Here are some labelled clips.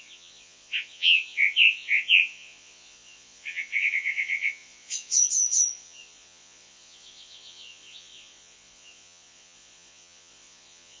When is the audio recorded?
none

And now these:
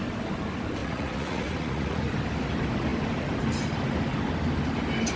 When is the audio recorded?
0.0-0.8; 2.0-5.2

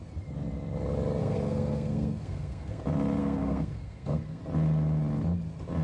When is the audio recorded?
0.0-1.2; 2.8-3.2; 4.4-5.8

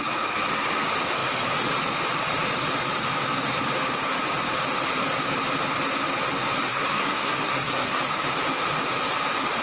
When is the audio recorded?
0.0-6.7; 8.0-9.6

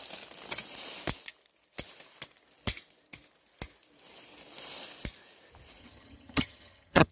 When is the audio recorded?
0.0-5.8

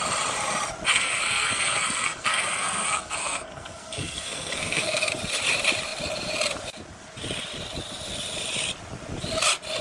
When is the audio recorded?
0.0-0.9; 5.1-9.8

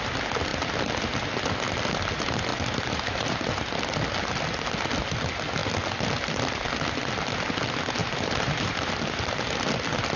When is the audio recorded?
0.0-2.5; 3.5-8.0; 8.9-10.2

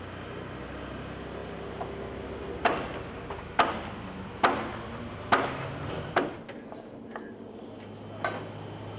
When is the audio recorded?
0.0-9.0